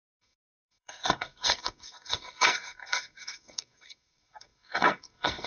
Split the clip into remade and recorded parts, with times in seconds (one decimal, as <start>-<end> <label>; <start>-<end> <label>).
0.0-5.5 remade